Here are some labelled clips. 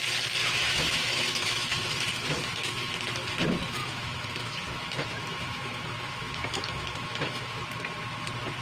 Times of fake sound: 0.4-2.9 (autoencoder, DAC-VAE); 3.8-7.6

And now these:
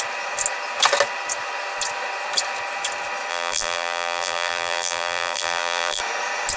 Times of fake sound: 3.3-6.0 (vocoder, BigVGAN v2)

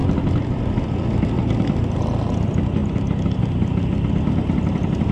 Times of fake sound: 0.0-2.8 (vocoder, BigVGAN v2); 3.4-5.1

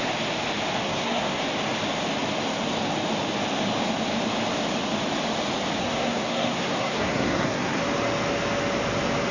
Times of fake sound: 0.8-1.4 (codec, SNAC); 5.8-7.8

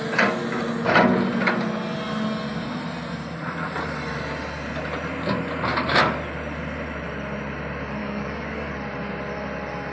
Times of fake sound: 8.0-8.7 (codec, DAC)